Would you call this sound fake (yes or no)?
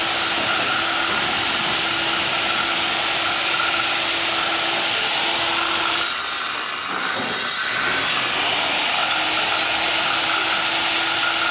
no